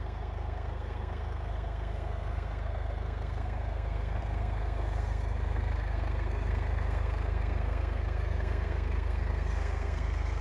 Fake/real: fake